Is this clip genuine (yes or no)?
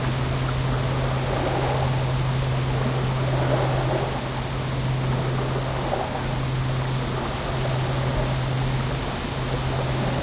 yes